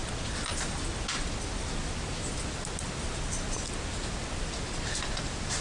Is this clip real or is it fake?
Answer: real